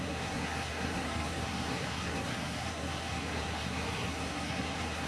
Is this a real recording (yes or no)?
no